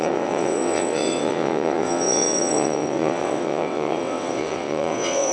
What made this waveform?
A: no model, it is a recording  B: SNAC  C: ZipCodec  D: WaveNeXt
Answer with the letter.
D